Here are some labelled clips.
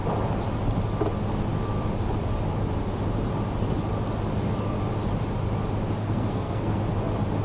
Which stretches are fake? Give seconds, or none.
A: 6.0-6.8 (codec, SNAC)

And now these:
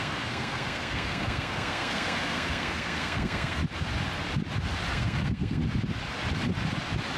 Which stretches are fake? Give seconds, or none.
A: 0.0-3.6 (codec, SNAC); 4.9-5.6

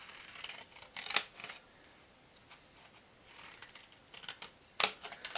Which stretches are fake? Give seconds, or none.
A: none

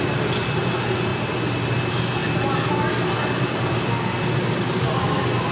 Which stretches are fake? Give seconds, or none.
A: none

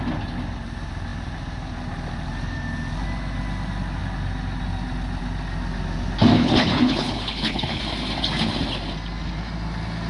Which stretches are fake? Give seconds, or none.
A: 6.4-7.8 (codec, HILCodec)

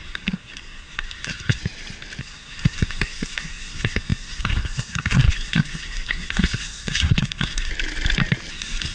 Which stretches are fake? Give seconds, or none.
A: 0.0-1.6 (codec, SNAC); 2.2-7.7; 8.5-8.9

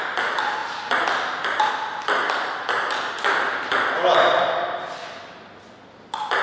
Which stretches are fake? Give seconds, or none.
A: none

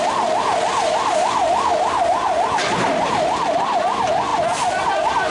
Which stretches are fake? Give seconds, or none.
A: 1.4-3.7 (vocoder, BigVGAN v2)